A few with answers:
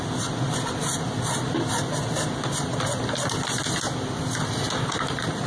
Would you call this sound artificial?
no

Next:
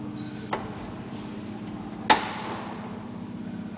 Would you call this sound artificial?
no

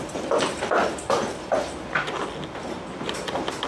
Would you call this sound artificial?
no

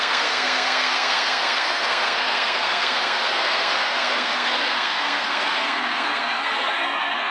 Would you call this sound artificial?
yes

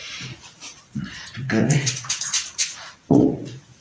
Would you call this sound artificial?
yes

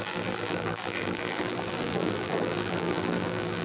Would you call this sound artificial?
yes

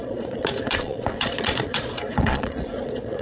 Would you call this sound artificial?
yes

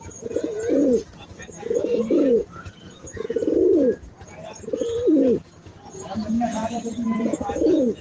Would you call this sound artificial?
yes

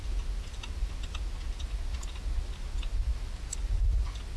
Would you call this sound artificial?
no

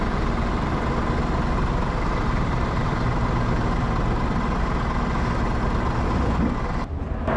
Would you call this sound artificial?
no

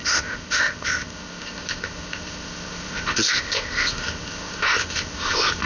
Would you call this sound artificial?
yes